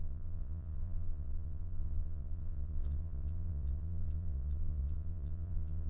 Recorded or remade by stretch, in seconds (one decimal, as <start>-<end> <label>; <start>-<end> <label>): 0.0-5.9 remade